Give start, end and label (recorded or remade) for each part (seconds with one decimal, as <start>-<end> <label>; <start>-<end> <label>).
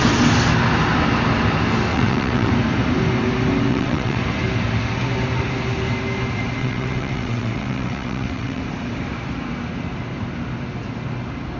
0.0-1.9 recorded; 1.9-2.5 remade; 2.5-3.7 recorded; 3.7-4.2 remade; 4.2-6.6 recorded; 6.6-8.6 remade; 8.6-11.6 recorded